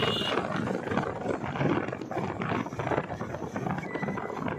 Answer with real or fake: fake